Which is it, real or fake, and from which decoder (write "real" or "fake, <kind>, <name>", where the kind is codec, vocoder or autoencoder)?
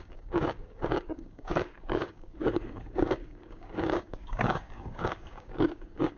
fake, codec, DAC